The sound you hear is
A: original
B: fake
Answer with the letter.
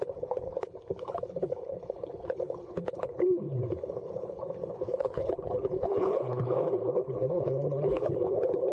B